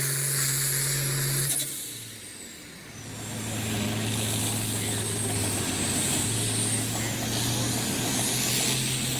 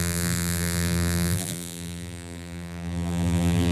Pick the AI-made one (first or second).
second